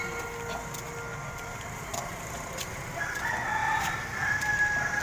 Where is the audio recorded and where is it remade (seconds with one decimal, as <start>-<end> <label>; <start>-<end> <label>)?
0.0-1.1 recorded; 1.1-3.0 remade; 3.0-3.6 recorded; 3.6-5.0 remade